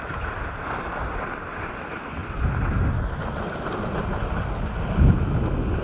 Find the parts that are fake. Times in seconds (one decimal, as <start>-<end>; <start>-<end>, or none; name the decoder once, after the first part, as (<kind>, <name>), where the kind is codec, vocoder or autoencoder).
none

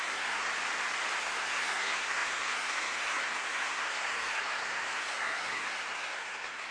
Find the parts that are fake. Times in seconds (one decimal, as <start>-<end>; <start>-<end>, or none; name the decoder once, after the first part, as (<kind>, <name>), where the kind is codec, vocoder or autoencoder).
0.0-0.5 (codec, SNAC); 1.2-6.7

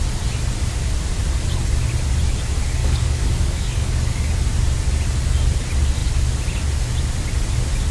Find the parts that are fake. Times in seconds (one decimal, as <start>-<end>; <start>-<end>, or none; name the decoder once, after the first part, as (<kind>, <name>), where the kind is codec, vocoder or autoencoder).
2.8-4.3 (codec, DAC)

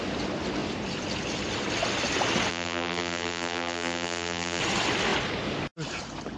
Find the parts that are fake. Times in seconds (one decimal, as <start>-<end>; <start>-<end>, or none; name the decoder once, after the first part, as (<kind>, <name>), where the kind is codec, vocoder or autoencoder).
2.5-4.6 (vocoder, BigVGAN v2)

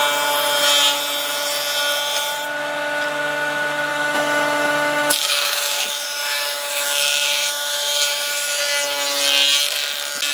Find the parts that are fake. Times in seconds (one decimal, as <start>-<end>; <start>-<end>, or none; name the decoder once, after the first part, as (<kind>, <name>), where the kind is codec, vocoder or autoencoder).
3.9-8.6 (autoencoder, DAC-VAE)